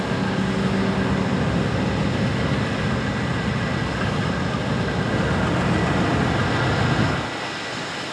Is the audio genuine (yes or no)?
yes